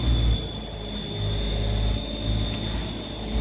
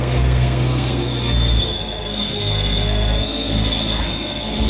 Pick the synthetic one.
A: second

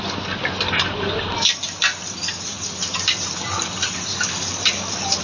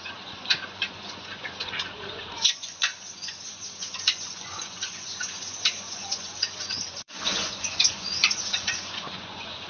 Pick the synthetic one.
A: second